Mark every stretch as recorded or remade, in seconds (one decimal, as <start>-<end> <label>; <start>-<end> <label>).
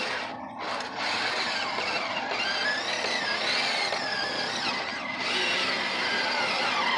0.0-7.0 recorded